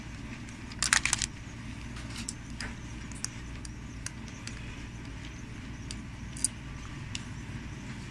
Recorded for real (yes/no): yes